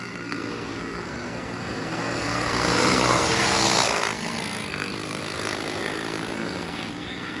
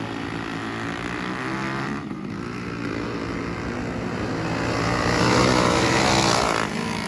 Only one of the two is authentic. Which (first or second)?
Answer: second